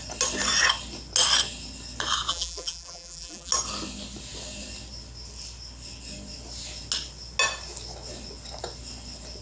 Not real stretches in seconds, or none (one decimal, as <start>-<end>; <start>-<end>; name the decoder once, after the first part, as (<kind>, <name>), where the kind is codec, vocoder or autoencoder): 2.3-3.5 (vocoder, BigVGAN v2)